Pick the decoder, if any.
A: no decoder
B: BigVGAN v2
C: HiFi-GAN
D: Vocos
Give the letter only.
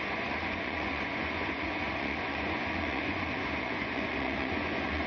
D